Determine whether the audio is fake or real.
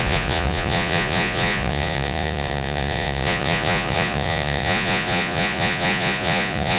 fake